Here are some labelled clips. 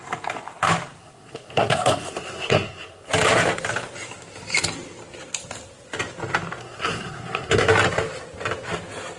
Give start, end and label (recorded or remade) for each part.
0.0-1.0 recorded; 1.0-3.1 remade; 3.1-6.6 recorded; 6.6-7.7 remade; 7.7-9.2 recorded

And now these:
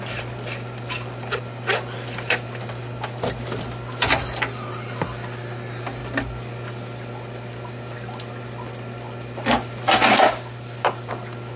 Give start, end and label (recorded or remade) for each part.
0.0-11.6 recorded

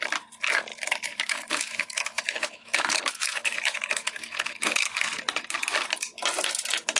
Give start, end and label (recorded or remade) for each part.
0.0-0.7 recorded; 0.7-4.9 remade; 4.9-7.0 recorded

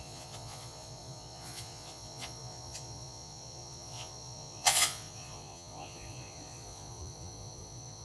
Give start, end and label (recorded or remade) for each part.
0.0-8.0 remade